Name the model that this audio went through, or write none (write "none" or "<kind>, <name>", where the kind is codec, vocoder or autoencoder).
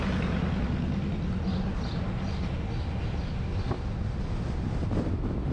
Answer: none